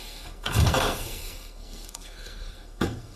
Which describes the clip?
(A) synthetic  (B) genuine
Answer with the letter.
A